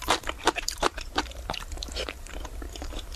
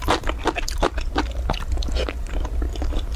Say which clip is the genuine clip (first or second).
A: second